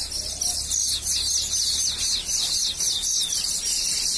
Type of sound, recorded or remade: recorded